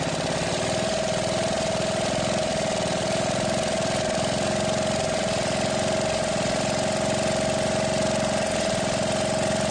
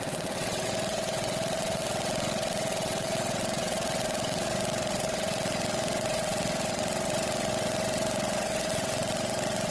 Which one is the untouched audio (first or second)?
first